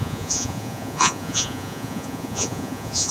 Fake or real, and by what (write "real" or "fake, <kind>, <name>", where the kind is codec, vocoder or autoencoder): fake, vocoder, Vocos